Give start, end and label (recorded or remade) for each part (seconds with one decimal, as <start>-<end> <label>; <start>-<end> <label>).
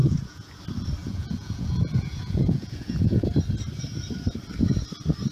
0.0-0.6 remade; 0.6-1.0 recorded; 1.0-3.3 remade; 3.3-5.3 recorded